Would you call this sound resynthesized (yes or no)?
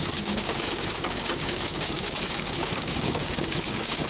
yes